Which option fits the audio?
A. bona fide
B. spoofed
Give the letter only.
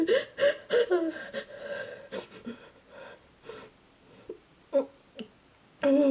A